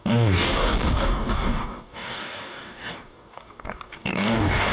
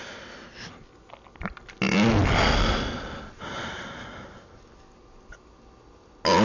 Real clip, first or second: second